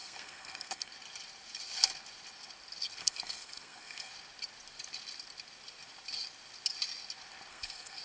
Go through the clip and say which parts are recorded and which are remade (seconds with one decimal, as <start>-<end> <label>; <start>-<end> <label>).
0.0-0.9 remade; 0.9-3.0 recorded; 3.0-4.1 remade; 4.1-7.5 recorded; 7.5-8.0 remade